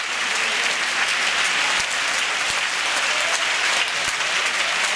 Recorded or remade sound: recorded